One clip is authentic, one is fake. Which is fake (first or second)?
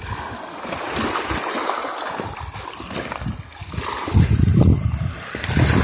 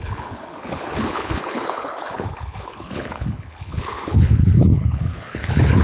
second